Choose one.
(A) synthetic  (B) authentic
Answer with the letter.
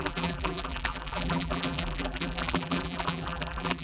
A